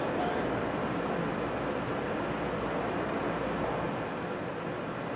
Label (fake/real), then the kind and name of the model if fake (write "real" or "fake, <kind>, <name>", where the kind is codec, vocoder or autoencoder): real